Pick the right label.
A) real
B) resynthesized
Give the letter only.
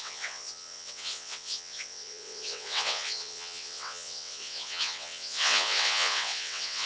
B